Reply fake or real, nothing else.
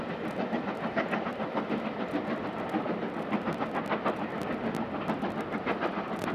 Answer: real